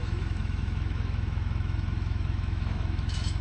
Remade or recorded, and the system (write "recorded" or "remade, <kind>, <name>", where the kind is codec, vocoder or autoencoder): remade, autoencoder, DAC-VAE